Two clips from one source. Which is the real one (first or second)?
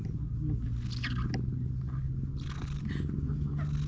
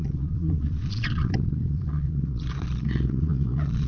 first